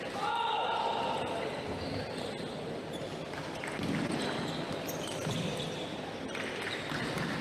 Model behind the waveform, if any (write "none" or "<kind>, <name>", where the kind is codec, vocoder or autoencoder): none